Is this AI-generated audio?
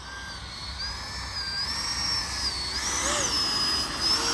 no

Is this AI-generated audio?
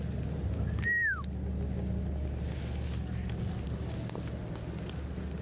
no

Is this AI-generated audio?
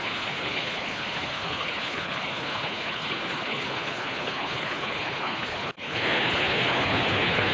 yes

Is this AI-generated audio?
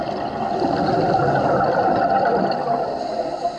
no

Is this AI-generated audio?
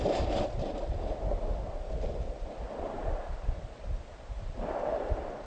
no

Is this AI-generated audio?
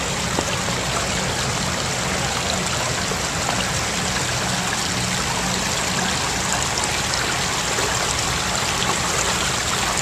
no